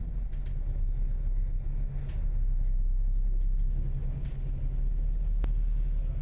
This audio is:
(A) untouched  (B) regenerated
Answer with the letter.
A